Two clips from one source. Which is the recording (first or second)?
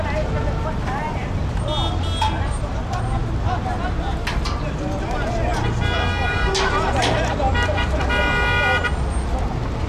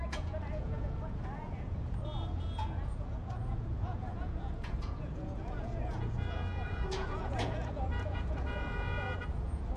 first